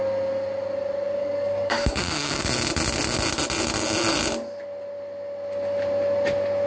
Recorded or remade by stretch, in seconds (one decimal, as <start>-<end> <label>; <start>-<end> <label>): 0.0-1.2 recorded; 1.2-2.5 remade; 2.5-6.7 recorded